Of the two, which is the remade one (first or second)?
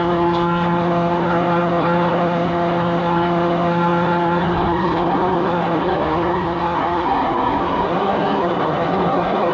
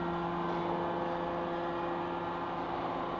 first